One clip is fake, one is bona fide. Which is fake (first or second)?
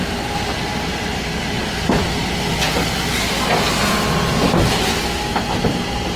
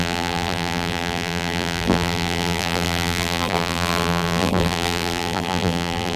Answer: second